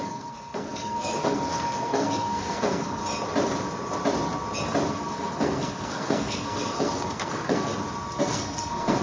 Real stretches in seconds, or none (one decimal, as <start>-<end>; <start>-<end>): 3.0-4.9; 7.7-8.2